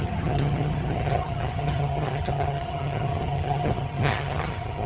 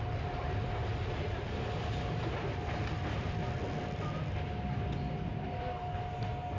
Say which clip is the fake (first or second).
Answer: first